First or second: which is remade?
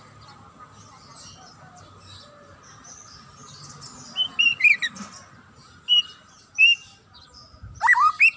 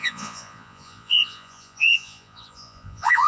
second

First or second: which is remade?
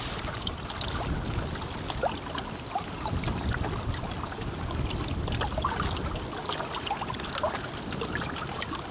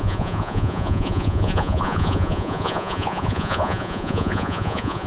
second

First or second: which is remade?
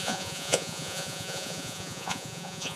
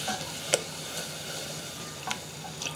first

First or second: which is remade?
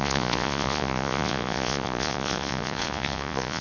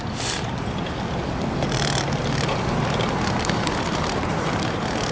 first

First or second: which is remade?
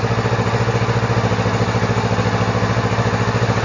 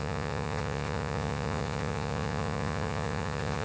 second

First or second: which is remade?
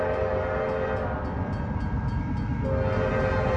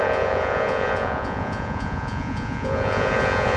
second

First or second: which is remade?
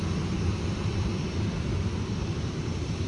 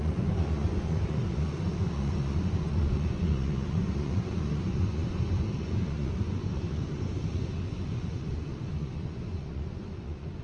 second